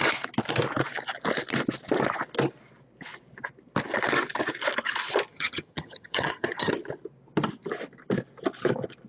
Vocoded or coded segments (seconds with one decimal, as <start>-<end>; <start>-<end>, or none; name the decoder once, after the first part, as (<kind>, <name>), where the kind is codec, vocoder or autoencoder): 5.3-6.7 (vocoder, HiFi-GAN)